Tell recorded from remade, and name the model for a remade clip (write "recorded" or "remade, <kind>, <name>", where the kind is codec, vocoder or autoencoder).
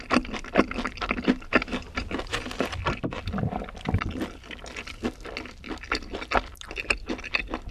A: recorded